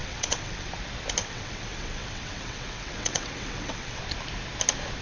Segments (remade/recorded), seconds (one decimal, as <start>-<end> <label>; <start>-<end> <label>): 0.0-0.7 remade; 0.7-1.2 recorded; 1.2-4.0 remade; 4.0-5.0 recorded